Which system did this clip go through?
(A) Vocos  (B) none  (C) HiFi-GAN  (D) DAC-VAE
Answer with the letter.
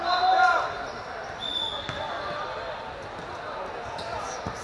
B